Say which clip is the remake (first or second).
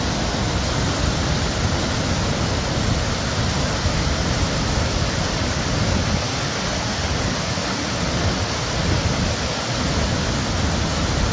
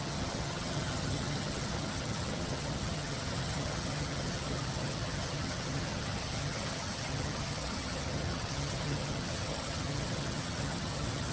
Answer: second